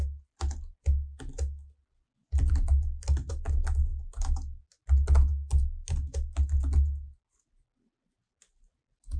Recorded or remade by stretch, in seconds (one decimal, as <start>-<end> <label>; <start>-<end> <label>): 0.0-9.2 recorded